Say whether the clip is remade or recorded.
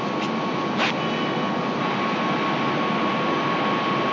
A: recorded